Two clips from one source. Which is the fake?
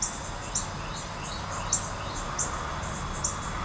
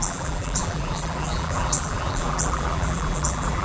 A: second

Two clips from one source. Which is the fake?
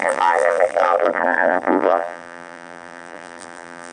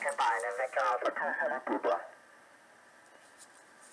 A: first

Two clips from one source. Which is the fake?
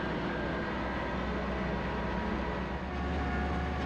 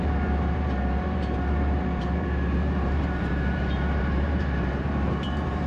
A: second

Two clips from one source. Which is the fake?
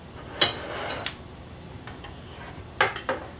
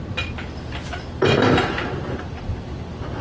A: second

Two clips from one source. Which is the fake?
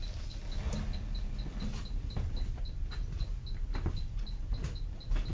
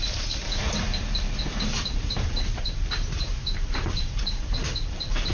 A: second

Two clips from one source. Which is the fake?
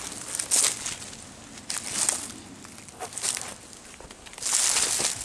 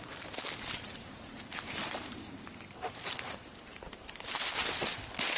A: second